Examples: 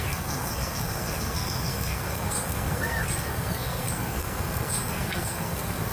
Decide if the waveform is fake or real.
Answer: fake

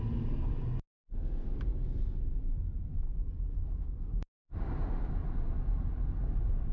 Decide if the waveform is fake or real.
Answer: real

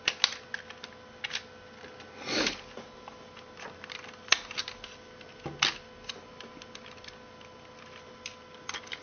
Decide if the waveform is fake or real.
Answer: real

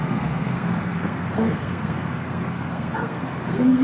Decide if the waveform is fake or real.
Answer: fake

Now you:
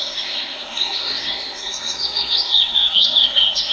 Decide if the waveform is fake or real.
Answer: fake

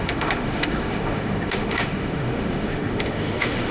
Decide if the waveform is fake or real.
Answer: fake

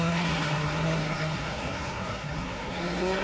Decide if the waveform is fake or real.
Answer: fake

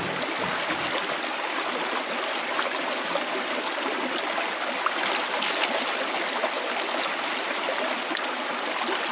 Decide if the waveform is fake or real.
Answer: real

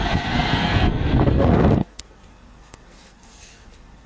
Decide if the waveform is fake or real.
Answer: fake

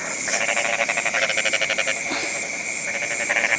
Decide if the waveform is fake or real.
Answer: real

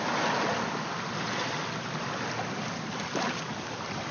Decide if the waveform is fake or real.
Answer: real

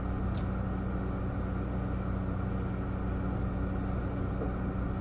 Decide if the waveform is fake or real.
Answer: real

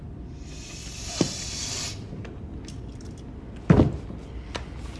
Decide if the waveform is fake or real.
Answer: real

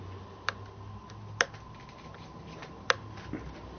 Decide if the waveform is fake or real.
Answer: real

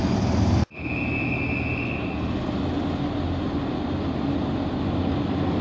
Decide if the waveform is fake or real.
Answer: real